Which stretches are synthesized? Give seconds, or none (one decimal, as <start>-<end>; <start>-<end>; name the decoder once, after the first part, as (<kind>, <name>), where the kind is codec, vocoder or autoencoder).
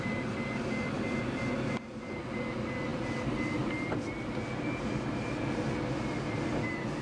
none